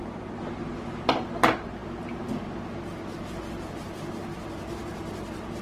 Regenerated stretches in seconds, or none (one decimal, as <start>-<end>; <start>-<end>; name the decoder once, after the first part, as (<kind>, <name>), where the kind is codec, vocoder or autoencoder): none